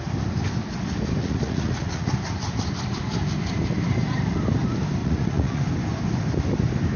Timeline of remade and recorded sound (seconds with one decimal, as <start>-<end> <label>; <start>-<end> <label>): 0.0-1.2 recorded; 1.2-2.1 remade; 2.1-5.0 recorded; 5.0-5.6 remade; 5.6-7.0 recorded